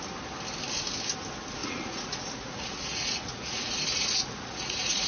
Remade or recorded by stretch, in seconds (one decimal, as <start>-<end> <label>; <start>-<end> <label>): 0.0-1.6 recorded; 1.6-5.1 remade